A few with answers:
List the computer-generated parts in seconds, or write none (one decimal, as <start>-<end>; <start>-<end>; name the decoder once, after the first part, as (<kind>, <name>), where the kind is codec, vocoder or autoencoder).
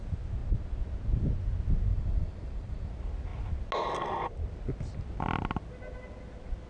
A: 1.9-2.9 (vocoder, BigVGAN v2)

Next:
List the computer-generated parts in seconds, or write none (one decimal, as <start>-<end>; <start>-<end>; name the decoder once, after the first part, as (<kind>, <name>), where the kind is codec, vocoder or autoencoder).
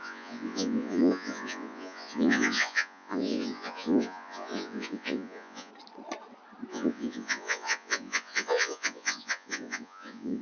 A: 0.0-5.7 (vocoder, Vocos); 6.7-10.4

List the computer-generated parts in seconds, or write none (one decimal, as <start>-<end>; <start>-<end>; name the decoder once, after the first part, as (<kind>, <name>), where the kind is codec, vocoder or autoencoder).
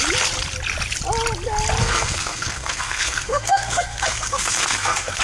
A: 1.8-5.2 (codec, SNAC)